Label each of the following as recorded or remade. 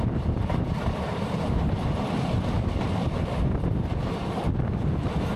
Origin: remade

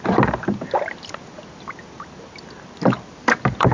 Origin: recorded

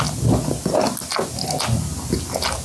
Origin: recorded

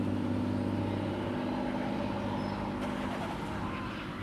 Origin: recorded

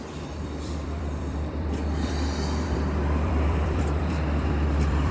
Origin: remade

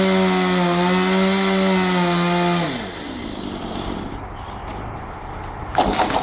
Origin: recorded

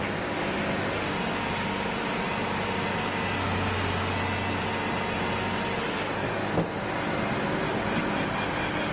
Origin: recorded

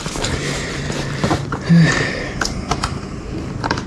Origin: remade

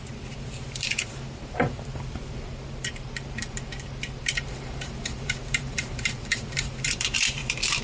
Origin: remade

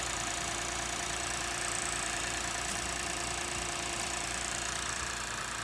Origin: remade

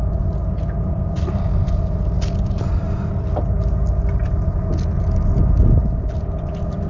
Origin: recorded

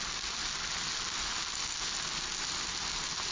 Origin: recorded